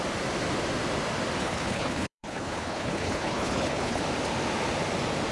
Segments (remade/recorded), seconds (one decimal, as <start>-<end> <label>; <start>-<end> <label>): 0.0-1.4 recorded; 1.4-4.0 remade; 4.0-5.3 recorded